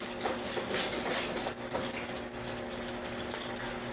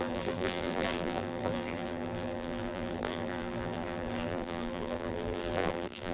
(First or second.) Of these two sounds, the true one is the first